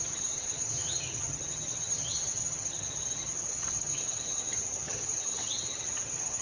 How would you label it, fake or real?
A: fake